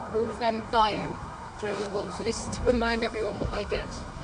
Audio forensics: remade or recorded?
remade